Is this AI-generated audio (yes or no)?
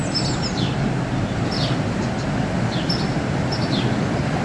no